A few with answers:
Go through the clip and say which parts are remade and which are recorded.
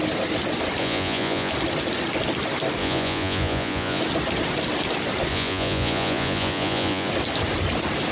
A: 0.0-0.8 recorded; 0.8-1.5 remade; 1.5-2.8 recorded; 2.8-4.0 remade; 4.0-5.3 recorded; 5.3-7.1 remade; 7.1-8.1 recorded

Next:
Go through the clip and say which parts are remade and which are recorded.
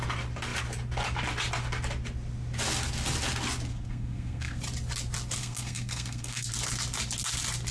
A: 0.0-3.7 recorded; 3.7-4.6 remade; 4.6-5.4 recorded; 5.4-6.5 remade; 6.5-7.7 recorded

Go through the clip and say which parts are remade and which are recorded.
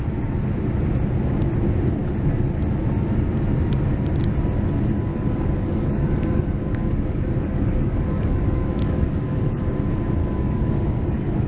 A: 0.0-5.1 recorded; 5.1-9.7 remade; 9.7-10.2 recorded; 10.2-11.5 remade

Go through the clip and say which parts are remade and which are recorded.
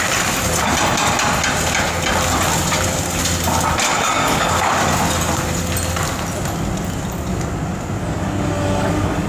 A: 0.0-3.9 recorded; 3.9-4.7 remade; 4.7-8.0 recorded; 8.0-9.3 remade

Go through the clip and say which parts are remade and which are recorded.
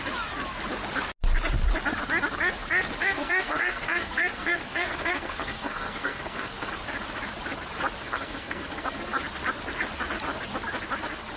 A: 0.0-3.0 recorded; 3.0-6.7 remade; 6.7-8.0 recorded; 8.0-9.2 remade; 9.2-11.4 recorded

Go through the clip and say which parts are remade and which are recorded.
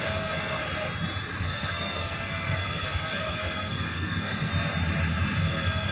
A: 0.0-0.6 remade; 0.6-1.4 recorded; 1.4-4.5 remade; 4.5-5.4 recorded; 5.4-5.9 remade